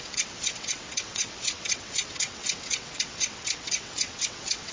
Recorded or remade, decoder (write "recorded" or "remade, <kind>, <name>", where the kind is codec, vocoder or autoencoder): remade, vocoder, WaveNeXt